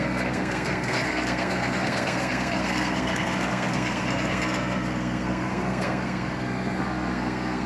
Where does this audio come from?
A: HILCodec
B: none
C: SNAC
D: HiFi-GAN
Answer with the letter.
C